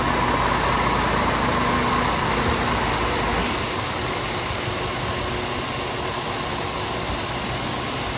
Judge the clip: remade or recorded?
recorded